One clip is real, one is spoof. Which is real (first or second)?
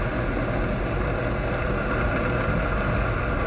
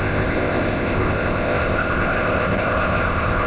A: first